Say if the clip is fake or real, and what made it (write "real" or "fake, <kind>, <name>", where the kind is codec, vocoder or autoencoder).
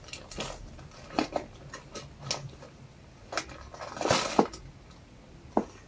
real